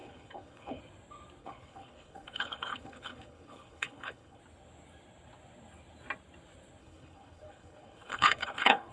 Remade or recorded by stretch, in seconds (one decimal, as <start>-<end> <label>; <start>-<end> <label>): 0.0-0.8 remade; 0.8-1.4 recorded; 1.4-4.4 remade; 4.4-6.8 recorded; 6.8-8.9 remade